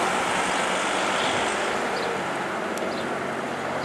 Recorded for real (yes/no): yes